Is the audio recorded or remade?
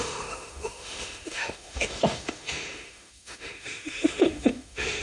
remade